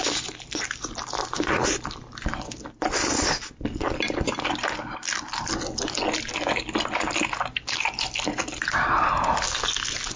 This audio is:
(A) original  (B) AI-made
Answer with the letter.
A